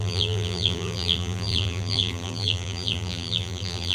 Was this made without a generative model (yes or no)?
no